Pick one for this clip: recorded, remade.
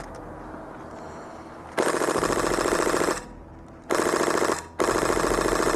recorded